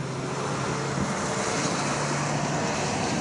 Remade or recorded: recorded